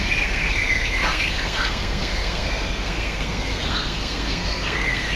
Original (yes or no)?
no